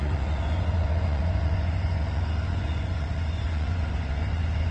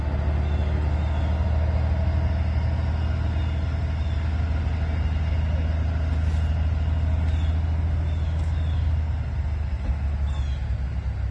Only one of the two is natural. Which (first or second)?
second